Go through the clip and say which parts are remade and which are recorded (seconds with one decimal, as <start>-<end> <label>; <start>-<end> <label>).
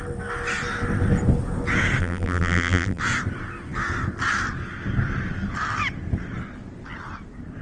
0.0-2.0 recorded; 2.0-3.0 remade; 3.0-7.6 recorded